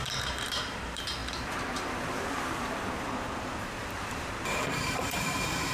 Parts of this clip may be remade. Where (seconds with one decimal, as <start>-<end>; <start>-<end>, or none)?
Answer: 0.0-5.7